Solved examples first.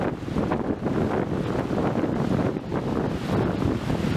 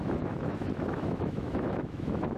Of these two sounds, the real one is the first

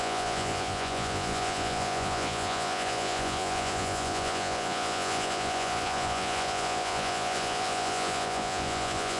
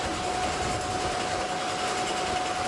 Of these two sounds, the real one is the second